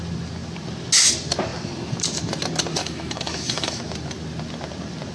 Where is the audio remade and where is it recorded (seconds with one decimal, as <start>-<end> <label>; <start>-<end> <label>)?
0.0-2.8 recorded; 2.8-3.8 remade; 3.8-5.1 recorded